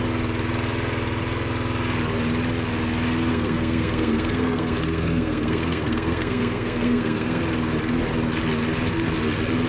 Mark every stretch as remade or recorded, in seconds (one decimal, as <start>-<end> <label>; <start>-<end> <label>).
0.0-3.3 recorded; 3.3-7.4 remade; 7.4-9.7 recorded